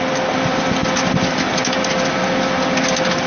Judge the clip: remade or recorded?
recorded